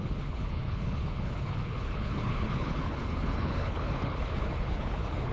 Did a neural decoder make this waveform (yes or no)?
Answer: yes